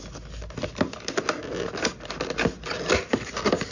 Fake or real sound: real